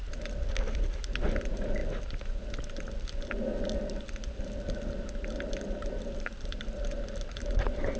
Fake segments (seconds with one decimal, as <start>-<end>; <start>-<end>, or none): none